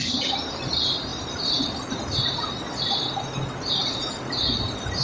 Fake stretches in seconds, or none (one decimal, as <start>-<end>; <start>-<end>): none